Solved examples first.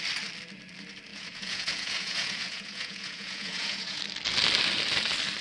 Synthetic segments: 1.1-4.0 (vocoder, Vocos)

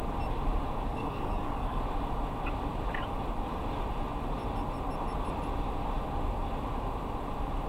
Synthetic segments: 0.9-1.8 (codec, DAC)